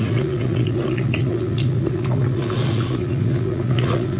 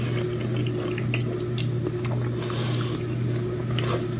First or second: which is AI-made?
first